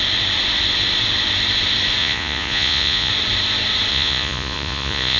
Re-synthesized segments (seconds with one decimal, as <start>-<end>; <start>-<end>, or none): 2.0-3.1; 3.9-5.2